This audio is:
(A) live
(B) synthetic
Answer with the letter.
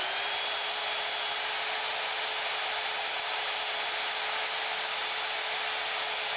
A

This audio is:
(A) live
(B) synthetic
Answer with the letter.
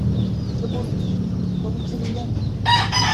A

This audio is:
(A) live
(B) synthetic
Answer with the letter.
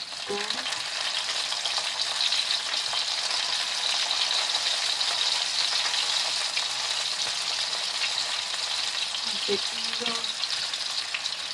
A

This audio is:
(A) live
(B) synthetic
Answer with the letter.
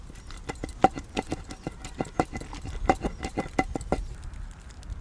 A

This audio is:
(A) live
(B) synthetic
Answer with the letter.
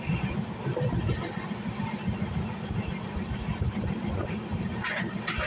A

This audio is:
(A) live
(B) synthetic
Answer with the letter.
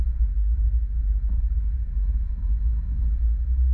B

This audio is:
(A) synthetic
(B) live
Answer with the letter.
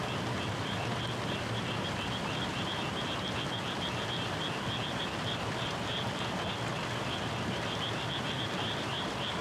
A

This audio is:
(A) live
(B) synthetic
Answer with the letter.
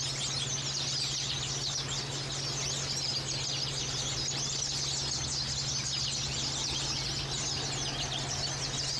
A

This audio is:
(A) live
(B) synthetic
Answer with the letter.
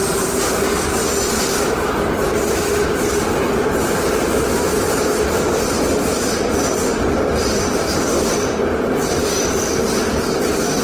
B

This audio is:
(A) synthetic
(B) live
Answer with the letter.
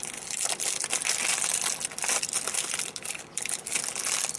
B